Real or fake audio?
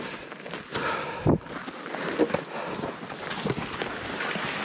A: real